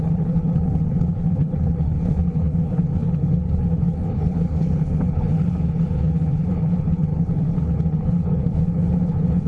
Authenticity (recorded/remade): remade